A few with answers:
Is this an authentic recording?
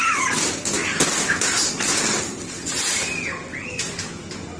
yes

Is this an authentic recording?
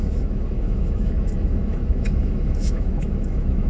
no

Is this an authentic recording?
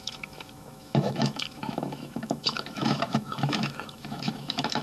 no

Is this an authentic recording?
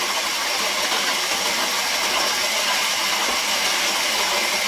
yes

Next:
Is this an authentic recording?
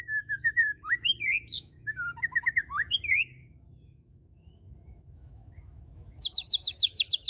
no